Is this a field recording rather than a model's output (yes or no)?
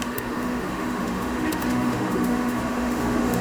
no